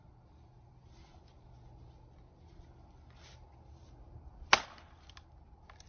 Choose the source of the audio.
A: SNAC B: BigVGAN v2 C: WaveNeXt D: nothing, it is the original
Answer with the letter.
D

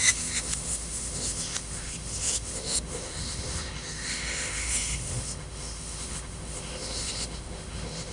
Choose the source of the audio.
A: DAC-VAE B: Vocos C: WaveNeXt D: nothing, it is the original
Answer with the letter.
A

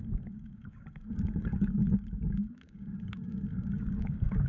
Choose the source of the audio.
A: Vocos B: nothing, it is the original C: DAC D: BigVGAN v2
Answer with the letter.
C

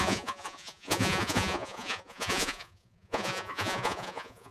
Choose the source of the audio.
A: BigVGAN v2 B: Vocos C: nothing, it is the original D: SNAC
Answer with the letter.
B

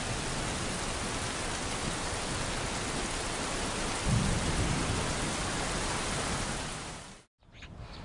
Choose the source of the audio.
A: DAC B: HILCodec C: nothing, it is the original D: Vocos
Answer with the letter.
C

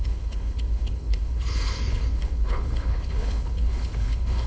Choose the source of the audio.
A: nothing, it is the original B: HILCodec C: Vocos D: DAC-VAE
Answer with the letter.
B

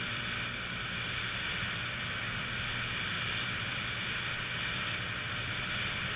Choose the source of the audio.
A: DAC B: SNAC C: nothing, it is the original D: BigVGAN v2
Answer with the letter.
C